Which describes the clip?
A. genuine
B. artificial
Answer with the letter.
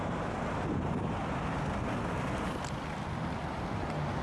A